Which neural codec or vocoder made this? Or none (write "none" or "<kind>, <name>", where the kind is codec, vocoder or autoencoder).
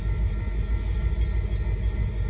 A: none